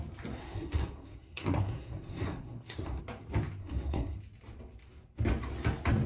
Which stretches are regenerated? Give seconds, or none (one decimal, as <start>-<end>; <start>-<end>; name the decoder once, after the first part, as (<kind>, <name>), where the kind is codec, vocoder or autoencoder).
0.4-3.0 (codec, SNAC); 3.6-4.2